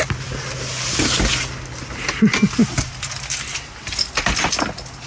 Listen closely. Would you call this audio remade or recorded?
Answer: recorded